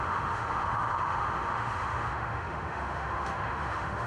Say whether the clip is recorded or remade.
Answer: remade